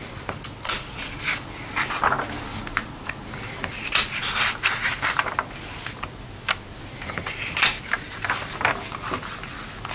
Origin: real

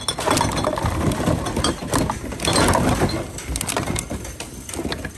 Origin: real